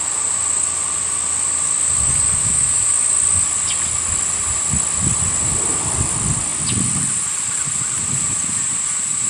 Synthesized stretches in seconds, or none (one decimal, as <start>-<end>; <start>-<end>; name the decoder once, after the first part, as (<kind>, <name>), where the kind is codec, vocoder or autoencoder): 2.4-2.9 (autoencoder, DAC-VAE)